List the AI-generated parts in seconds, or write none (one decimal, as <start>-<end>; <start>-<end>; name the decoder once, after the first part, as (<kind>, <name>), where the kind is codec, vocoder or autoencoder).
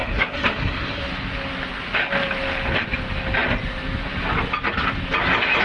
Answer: 0.0-1.0 (codec, SNAC)